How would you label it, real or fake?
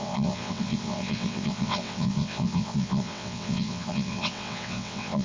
fake